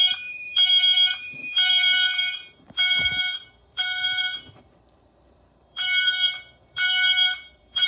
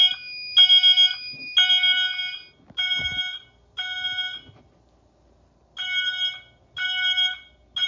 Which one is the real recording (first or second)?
second